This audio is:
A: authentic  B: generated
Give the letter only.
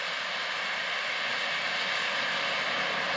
A